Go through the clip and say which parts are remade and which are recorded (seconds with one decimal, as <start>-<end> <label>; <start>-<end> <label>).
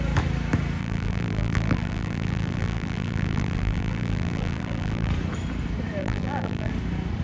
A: 0.0-0.8 recorded; 0.8-5.1 remade; 5.1-6.0 recorded; 6.0-6.7 remade; 6.7-7.2 recorded